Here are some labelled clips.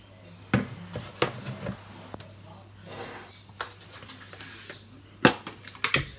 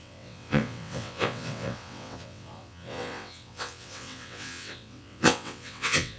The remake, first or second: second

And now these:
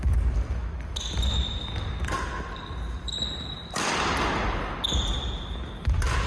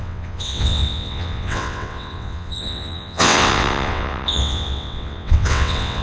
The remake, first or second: second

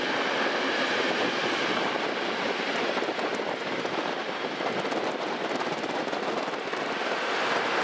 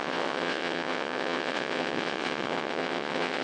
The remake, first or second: second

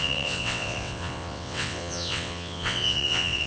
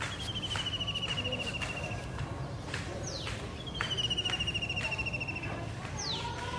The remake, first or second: first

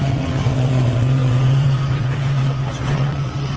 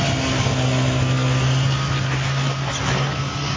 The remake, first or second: first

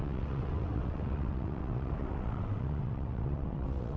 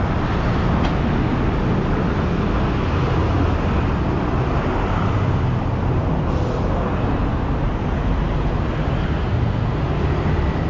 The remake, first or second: first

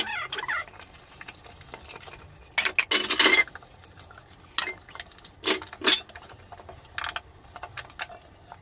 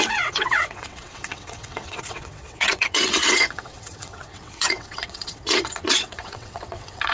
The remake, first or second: second